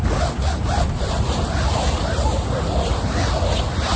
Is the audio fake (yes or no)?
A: no